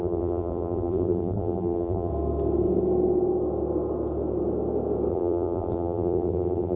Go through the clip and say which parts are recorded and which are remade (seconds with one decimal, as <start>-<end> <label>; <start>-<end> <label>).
0.0-2.1 remade; 2.1-5.1 recorded; 5.1-6.8 remade